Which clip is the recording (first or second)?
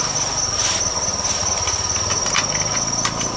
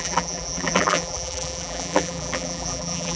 first